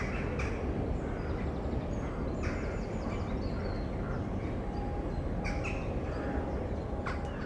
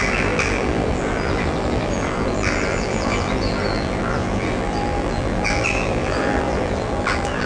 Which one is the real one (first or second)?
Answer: first